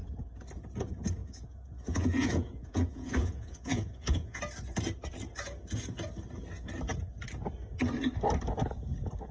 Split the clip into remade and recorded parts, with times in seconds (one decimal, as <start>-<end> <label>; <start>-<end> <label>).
0.0-1.2 recorded; 1.2-4.4 remade; 4.4-9.3 recorded